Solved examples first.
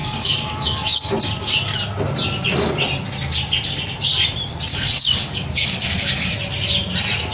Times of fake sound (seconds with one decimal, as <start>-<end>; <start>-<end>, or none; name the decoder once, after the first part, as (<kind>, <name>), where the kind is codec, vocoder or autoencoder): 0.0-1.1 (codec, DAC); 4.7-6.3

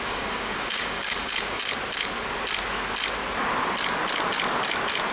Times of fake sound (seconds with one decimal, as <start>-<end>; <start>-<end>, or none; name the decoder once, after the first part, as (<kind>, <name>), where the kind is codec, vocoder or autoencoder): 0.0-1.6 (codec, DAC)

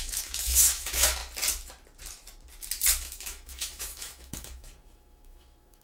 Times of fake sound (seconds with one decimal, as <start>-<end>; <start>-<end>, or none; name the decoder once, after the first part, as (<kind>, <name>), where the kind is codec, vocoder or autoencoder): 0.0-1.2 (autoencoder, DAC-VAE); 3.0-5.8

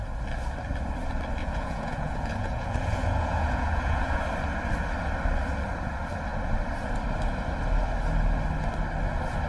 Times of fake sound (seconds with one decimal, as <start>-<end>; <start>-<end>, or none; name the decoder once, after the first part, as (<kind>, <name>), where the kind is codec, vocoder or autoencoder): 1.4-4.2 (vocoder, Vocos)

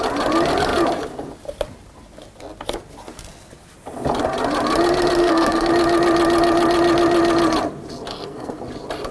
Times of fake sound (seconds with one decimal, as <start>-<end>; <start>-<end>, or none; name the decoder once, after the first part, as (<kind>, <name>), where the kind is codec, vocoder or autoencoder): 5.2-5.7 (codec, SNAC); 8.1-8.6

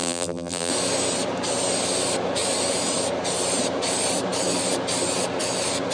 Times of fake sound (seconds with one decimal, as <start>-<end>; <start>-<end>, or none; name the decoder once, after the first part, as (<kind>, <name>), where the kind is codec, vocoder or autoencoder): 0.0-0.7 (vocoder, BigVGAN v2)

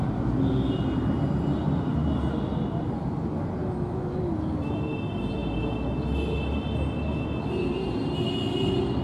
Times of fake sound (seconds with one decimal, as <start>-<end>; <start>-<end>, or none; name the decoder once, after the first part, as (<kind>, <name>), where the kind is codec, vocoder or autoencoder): 3.6-4.2 (autoencoder, DAC-VAE)

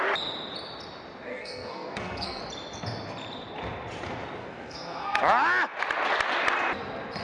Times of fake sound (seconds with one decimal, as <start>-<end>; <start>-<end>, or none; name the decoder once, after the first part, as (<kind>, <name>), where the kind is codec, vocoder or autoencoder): 1.3-2.4 (codec, SNAC); 4.4-5.2